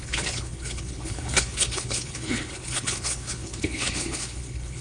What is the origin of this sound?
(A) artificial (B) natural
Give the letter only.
A